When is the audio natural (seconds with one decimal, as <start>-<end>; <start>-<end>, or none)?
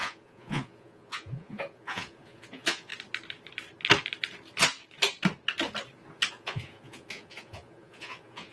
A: 2.9-6.3